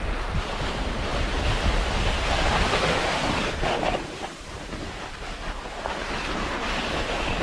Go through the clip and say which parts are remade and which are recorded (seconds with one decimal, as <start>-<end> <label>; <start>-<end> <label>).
0.0-7.4 recorded